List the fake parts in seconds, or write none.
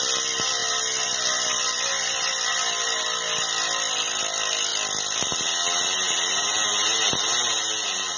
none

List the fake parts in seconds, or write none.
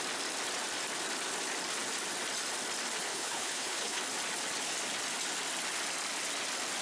3.1-4.0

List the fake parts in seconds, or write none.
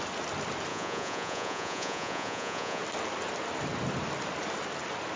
0.7-2.8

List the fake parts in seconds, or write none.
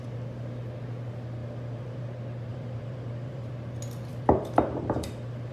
1.4-2.0; 2.5-3.5; 4.1-5.5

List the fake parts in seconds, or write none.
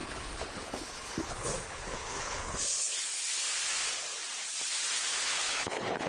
0.0-3.7; 5.1-6.1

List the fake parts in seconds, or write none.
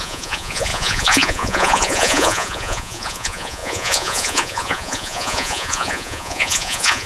0.0-7.1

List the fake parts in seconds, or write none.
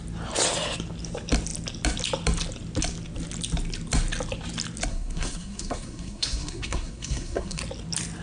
4.9-7.6